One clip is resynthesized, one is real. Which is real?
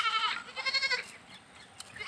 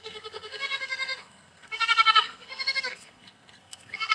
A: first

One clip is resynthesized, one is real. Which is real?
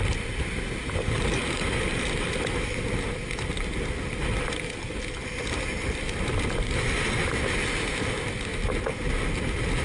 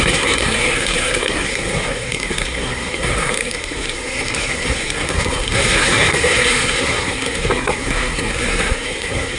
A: first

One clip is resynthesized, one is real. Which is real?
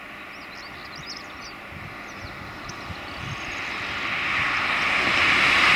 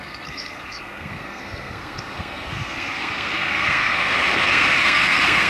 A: first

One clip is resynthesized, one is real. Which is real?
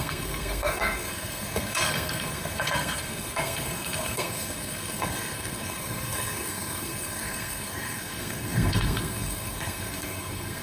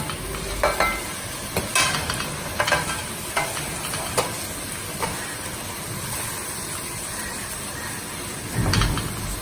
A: second